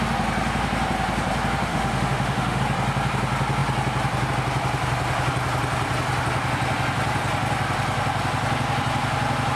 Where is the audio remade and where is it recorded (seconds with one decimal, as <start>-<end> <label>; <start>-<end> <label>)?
0.0-1.7 recorded; 1.7-2.6 remade; 2.6-9.6 recorded